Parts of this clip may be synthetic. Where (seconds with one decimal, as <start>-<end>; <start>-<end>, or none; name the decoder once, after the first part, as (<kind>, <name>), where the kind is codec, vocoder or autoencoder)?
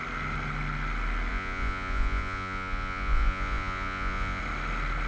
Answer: 1.3-4.4 (vocoder, Vocos)